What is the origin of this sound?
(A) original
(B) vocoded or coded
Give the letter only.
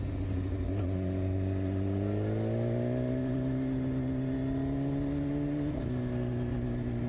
A